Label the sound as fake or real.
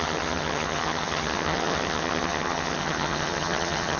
fake